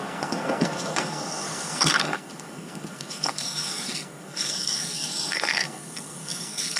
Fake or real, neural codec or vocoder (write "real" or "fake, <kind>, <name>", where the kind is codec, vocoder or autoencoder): fake, codec, SNAC